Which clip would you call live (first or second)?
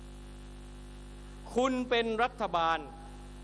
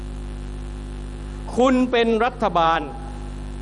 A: first